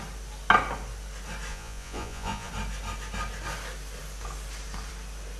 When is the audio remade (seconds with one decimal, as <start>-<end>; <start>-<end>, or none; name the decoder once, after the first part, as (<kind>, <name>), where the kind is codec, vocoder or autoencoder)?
1.5-2.5 (vocoder, Vocos)